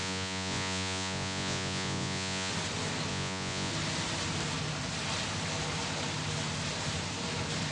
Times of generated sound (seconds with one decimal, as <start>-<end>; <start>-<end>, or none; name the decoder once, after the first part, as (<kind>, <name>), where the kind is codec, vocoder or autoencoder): 0.0-2.5 (vocoder, Vocos); 3.1-3.7